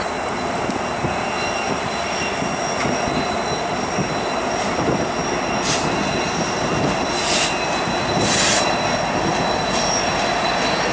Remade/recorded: recorded